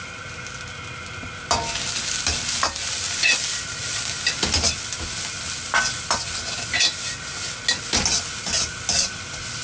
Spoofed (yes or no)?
no